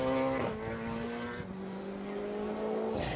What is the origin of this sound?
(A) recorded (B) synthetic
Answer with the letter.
A